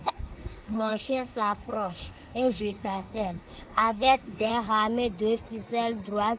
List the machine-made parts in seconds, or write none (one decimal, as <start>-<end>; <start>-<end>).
0.0-4.5